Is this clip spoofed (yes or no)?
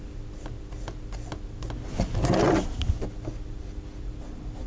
no